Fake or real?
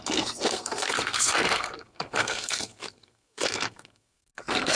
fake